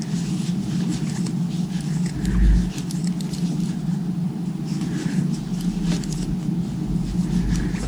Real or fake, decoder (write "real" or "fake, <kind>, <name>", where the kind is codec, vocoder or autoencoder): real